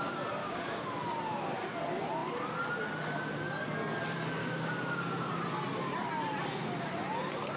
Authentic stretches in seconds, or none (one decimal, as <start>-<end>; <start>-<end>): 0.0-0.4; 0.9-4.4; 5.3-7.6